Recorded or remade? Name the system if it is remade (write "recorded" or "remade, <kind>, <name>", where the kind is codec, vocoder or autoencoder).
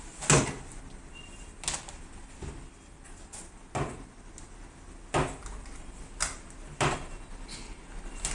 recorded